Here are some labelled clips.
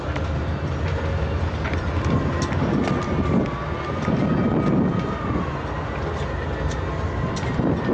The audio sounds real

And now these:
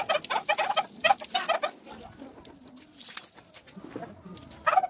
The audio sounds real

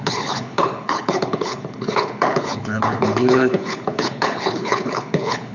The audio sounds fake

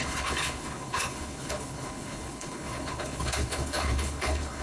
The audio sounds fake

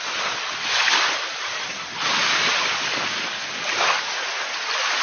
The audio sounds real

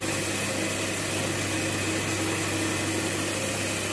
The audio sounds real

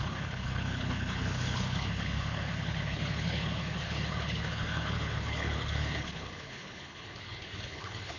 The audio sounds fake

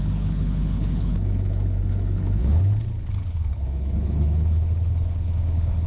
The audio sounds fake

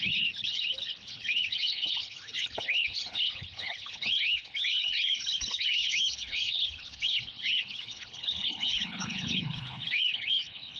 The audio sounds fake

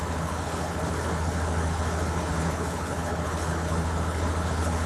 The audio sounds fake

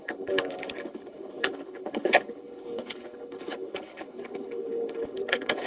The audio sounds fake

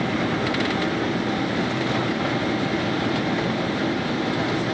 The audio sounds real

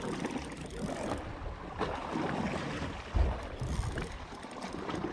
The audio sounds real